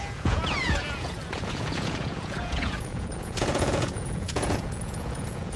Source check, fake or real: fake